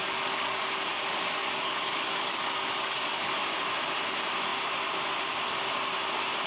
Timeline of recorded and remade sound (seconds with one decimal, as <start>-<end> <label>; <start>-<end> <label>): 0.0-3.3 remade; 3.3-6.5 recorded